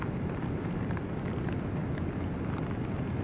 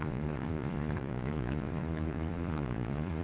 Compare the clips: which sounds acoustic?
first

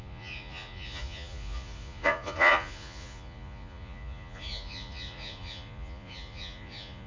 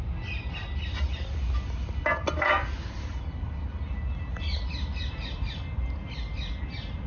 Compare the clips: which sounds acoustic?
second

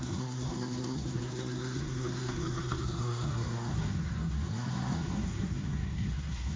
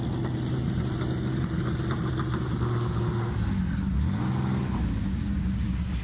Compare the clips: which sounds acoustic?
second